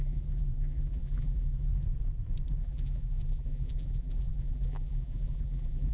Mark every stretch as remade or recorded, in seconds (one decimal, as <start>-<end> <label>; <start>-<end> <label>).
0.0-1.7 remade; 1.7-2.6 recorded; 2.6-5.9 remade